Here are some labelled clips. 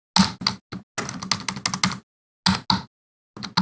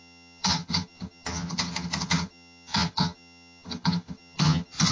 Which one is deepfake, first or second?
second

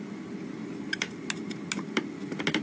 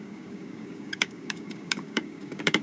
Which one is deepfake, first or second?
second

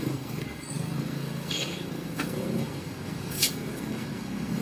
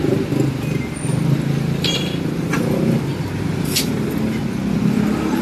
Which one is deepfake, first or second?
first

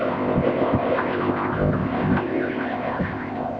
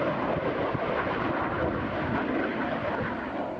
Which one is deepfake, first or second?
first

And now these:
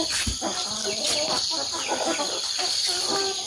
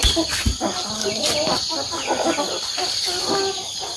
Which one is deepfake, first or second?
first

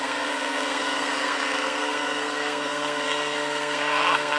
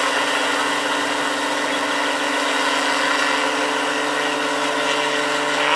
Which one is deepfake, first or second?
first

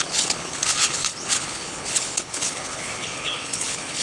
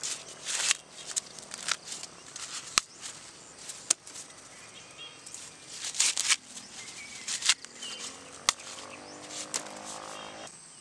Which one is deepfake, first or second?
first